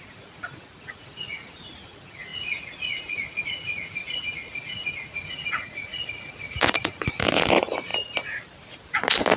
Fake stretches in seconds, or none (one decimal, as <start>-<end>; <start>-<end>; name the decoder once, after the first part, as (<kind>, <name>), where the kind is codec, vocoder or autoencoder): 0.0-7.9 (vocoder, Vocos); 8.9-9.4